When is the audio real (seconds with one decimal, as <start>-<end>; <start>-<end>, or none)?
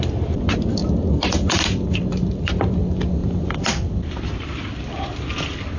none